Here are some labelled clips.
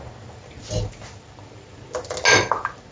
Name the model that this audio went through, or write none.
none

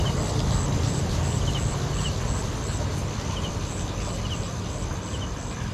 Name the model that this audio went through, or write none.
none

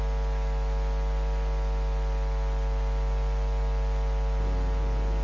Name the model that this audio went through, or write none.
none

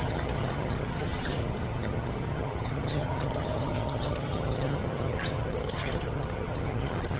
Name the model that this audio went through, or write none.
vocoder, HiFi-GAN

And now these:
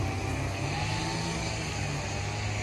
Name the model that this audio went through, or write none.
none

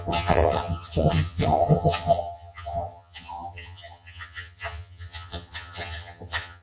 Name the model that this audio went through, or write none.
vocoder, HiFi-GAN